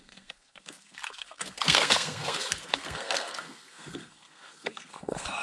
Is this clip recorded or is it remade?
remade